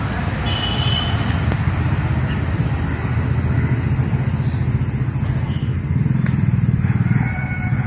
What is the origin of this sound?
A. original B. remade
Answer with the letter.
A